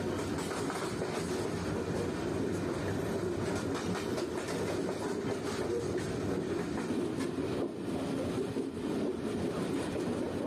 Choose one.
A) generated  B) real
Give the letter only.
B